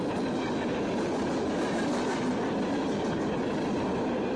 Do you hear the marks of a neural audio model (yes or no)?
no